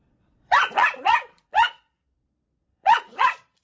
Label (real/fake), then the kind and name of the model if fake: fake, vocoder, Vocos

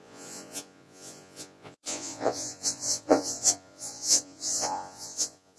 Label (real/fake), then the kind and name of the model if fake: fake, vocoder, Vocos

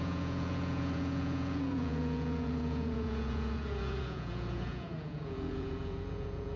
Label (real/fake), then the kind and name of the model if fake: fake, vocoder, Vocos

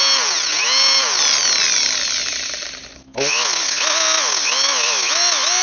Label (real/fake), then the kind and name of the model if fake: real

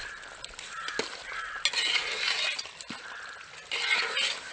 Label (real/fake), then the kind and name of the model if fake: real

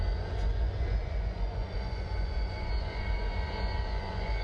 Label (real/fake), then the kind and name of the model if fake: fake, vocoder, Vocos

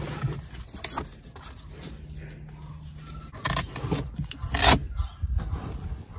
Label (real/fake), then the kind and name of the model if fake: real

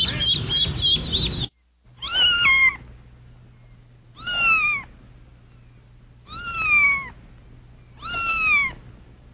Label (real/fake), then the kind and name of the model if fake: real